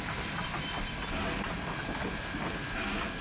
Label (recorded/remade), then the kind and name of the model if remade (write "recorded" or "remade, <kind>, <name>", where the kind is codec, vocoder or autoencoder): recorded